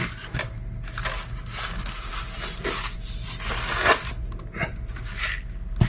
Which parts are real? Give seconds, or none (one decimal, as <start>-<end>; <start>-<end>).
0.0-5.9